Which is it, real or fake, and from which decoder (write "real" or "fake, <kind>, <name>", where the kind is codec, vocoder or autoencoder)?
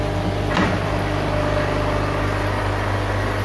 real